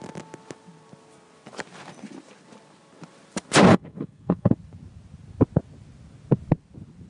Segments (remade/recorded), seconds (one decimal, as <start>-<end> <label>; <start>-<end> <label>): 0.0-3.7 recorded; 3.7-4.5 remade; 4.5-7.1 recorded